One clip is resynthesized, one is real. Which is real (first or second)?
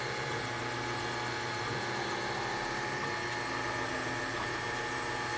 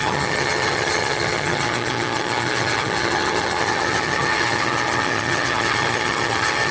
first